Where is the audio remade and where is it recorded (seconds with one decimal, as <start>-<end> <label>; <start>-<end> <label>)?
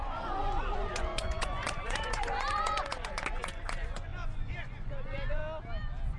0.0-5.4 remade; 5.4-6.2 recorded